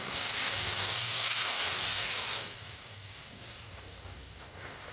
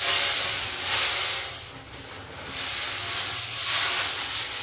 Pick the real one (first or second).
second